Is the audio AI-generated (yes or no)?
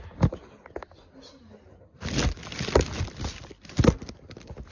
no